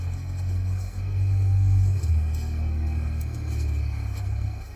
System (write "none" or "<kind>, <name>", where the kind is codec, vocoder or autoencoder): codec, SNAC